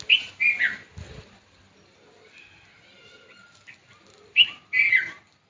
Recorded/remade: recorded